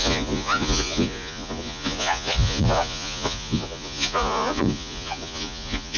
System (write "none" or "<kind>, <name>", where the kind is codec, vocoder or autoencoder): vocoder, Vocos